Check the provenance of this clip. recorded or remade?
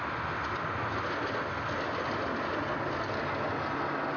recorded